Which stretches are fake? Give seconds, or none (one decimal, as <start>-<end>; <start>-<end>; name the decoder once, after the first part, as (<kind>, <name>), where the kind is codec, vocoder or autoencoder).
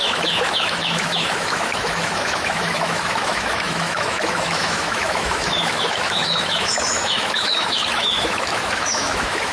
0.0-9.5 (autoencoder, DAC-VAE)